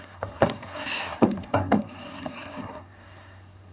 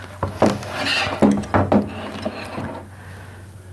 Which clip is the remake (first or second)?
first